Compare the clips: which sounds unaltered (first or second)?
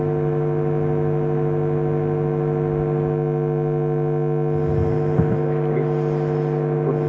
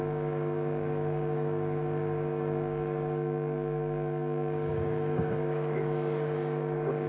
first